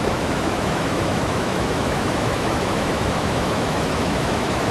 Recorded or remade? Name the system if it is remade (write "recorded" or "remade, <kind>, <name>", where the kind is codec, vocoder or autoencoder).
remade, autoencoder, DAC-VAE